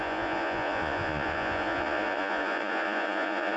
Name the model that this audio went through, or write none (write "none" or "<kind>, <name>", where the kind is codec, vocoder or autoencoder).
vocoder, Vocos